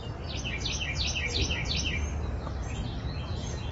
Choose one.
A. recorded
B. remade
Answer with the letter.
A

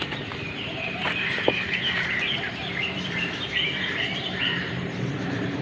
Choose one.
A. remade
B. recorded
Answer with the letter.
A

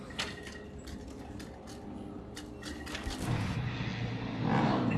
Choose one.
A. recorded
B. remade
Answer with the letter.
A